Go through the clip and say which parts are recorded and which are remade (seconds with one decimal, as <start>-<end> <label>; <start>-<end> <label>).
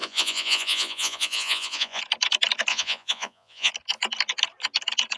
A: 0.0-2.0 remade; 2.0-2.7 recorded; 2.7-3.7 remade; 3.7-5.2 recorded